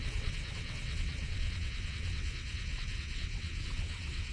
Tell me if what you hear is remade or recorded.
remade